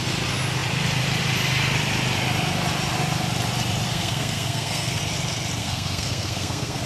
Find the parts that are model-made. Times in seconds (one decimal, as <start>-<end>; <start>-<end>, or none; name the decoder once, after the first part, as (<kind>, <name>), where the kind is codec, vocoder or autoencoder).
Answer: 3.9-5.0 (codec, SNAC); 5.6-6.9